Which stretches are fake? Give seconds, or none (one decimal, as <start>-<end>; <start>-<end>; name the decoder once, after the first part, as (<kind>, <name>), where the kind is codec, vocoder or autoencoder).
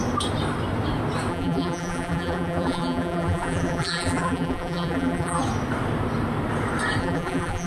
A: 1.3-5.4 (vocoder, BigVGAN v2); 7.0-7.7